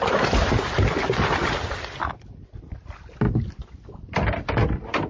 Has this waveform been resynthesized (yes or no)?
no